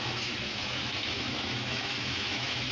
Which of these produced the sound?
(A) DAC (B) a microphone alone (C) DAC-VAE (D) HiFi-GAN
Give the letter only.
C